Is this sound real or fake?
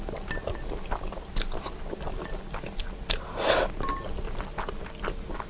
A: real